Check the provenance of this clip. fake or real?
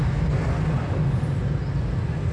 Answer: real